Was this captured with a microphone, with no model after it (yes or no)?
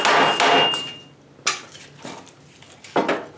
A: yes